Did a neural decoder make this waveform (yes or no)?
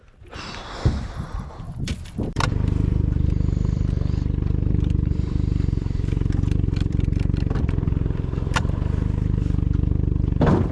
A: yes